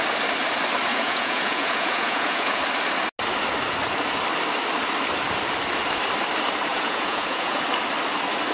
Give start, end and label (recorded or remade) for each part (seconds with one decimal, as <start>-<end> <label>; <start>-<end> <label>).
0.0-0.9 recorded; 0.9-2.6 remade; 2.6-6.7 recorded; 6.7-7.6 remade; 7.6-8.5 recorded